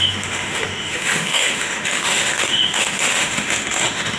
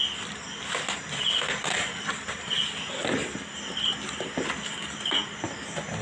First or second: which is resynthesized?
first